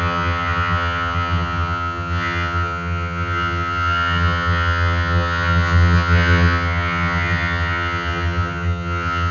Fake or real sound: fake